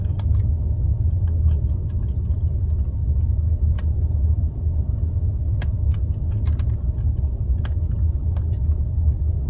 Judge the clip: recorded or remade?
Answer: recorded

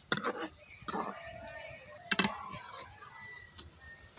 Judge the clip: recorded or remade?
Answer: recorded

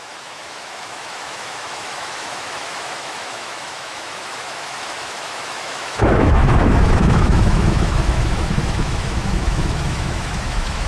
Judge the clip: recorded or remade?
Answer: remade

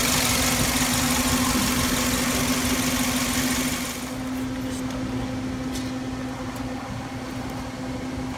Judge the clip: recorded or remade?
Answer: recorded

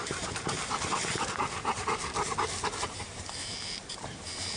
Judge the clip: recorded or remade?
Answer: remade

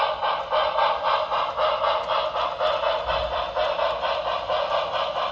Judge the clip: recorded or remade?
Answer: recorded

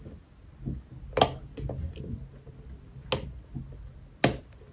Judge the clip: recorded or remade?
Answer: recorded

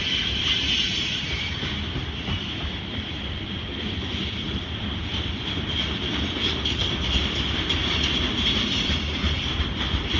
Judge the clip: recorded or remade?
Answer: remade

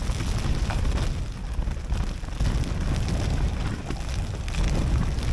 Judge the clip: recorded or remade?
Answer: recorded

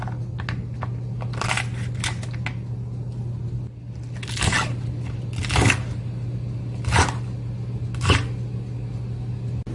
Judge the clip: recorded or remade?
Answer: recorded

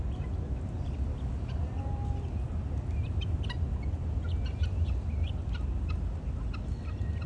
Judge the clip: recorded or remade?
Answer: recorded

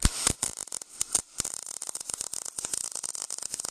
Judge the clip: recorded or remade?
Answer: recorded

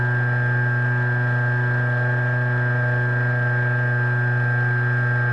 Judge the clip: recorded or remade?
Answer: recorded